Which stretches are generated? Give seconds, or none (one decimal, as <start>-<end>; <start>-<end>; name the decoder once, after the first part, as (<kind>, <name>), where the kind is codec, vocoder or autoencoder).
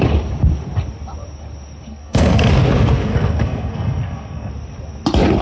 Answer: 1.9-2.5 (codec, SNAC); 3.1-4.5